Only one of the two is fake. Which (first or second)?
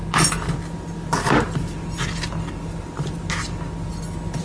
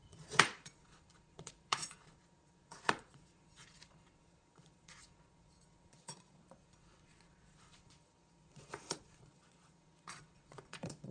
second